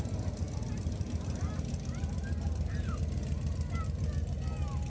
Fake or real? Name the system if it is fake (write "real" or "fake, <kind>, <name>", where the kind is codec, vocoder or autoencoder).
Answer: real